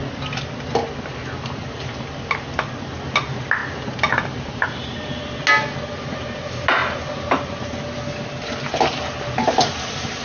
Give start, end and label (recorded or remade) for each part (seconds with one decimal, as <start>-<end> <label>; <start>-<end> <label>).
0.0-10.2 recorded